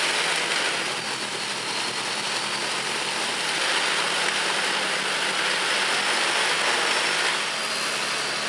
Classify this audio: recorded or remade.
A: recorded